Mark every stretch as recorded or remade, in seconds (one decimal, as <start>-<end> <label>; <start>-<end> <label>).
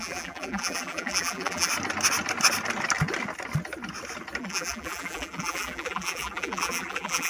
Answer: 0.0-1.7 remade; 1.7-4.4 recorded; 4.4-7.3 remade